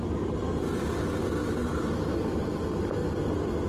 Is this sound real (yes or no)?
yes